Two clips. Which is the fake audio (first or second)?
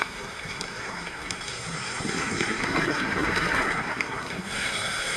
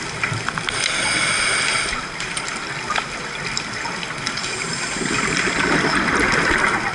first